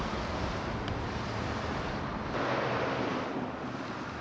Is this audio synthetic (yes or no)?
no